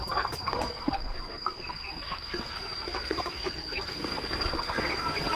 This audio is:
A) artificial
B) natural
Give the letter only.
A